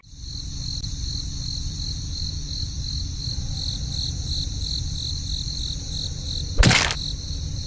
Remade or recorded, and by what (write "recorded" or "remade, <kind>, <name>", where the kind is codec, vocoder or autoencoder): recorded